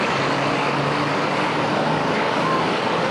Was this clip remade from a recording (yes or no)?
yes